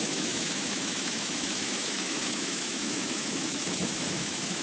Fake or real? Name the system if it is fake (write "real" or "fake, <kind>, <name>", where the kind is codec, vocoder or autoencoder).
fake, autoencoder, DAC-VAE